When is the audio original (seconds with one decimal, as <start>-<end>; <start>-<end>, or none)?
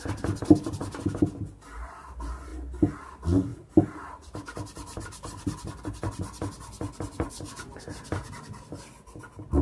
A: 0.0-9.6